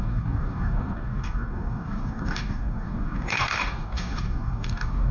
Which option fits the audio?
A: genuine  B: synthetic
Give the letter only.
B